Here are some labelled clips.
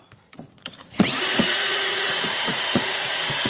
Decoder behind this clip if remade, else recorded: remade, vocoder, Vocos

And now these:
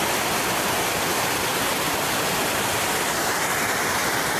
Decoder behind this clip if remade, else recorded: recorded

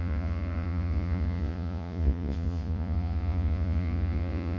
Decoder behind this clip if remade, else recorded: remade, vocoder, Vocos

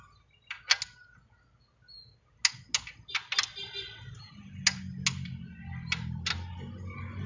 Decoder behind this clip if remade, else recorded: recorded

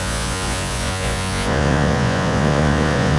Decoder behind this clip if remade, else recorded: remade, vocoder, Vocos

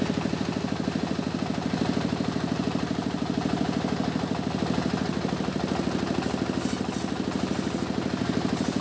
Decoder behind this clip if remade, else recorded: recorded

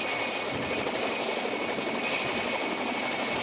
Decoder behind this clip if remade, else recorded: recorded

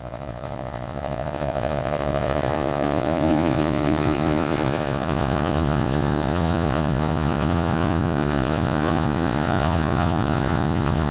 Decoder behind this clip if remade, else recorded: remade, vocoder, Vocos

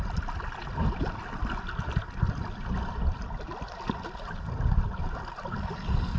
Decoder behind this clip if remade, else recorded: recorded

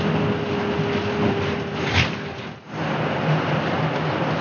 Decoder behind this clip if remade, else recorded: recorded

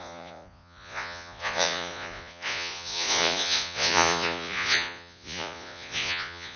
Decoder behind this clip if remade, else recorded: remade, vocoder, Vocos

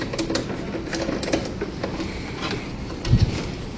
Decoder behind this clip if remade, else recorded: recorded